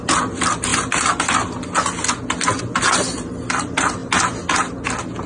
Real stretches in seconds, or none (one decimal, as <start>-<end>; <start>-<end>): 0.7-2.8; 4.0-5.3